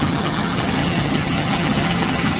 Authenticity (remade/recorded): remade